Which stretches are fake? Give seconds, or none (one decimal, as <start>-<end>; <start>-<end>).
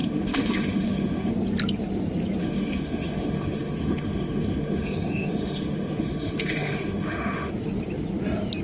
0.0-1.3; 2.4-7.5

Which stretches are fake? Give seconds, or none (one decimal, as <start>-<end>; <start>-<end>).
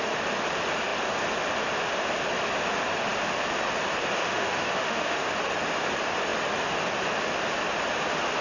4.2-5.3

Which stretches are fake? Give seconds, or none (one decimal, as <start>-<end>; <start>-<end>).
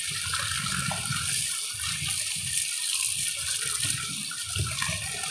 0.0-4.1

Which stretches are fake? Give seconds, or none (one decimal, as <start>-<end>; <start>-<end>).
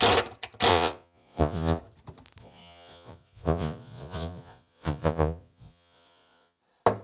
0.7-1.8; 2.4-6.6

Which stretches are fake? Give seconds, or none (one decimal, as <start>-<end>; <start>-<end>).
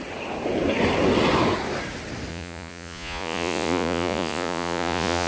2.3-5.3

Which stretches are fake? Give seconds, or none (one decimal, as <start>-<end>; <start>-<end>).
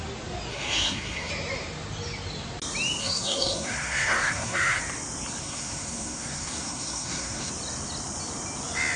0.5-1.3; 3.0-4.8; 5.4-7.5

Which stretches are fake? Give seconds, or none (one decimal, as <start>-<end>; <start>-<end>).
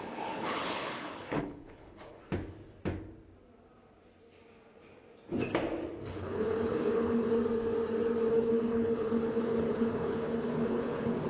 0.0-2.2; 6.1-7.3; 8.3-11.3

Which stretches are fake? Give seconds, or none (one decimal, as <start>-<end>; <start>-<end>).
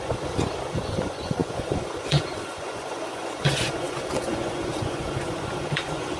0.0-6.2